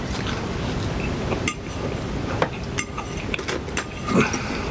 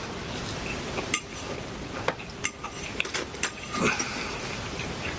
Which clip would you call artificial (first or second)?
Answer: second